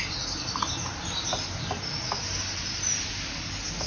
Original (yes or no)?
yes